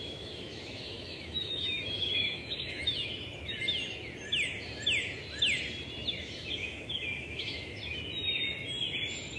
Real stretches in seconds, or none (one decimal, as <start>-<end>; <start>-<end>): 3.1-6.6; 7.8-9.4